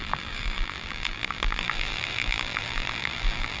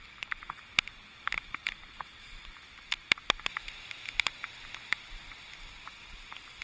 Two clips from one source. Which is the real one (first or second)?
second